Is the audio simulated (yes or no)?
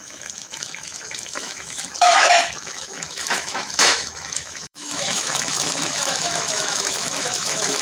yes